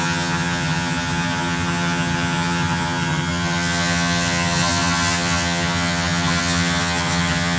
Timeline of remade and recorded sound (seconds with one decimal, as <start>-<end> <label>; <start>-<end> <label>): 0.0-7.6 remade